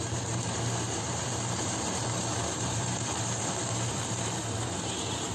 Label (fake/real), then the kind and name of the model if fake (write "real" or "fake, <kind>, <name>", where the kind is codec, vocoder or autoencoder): fake, vocoder, BigVGAN v2